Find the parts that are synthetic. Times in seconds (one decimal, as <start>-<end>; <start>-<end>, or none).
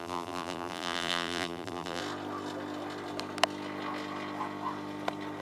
0.0-2.0